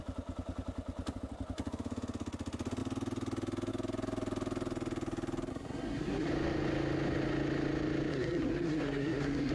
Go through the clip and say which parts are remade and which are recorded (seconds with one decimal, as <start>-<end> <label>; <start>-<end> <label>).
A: 0.0-5.5 recorded; 5.5-6.3 remade; 6.3-8.1 recorded; 8.1-9.5 remade

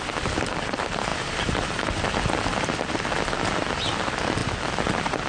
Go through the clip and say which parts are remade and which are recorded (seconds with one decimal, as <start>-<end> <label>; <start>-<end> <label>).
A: 0.0-5.3 recorded

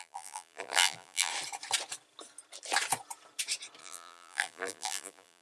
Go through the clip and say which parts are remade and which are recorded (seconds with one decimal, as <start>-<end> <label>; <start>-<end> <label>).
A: 0.0-1.3 remade; 1.3-3.8 recorded; 3.8-5.4 remade

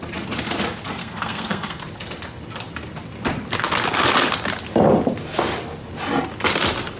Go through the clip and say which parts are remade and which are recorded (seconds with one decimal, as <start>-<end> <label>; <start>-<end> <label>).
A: 0.0-1.0 recorded; 1.0-1.8 remade; 1.8-7.0 recorded

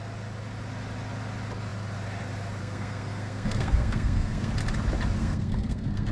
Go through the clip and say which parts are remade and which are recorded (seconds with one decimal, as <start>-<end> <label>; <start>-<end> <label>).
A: 0.0-2.6 recorded; 2.6-4.5 remade; 4.5-5.2 recorded; 5.2-6.1 remade

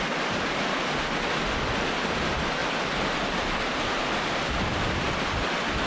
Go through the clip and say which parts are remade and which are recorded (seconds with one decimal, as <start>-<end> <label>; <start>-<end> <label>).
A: 0.0-5.9 recorded